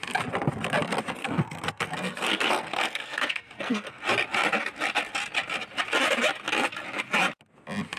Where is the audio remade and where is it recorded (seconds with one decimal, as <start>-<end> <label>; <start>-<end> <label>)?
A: 0.0-1.2 recorded; 1.2-4.0 remade; 4.0-8.0 recorded